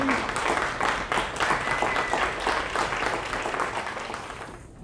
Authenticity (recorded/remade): recorded